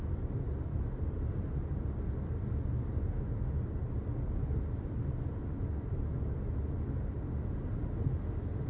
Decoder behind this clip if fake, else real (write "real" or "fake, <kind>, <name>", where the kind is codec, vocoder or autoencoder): real